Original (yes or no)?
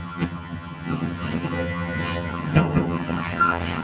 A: no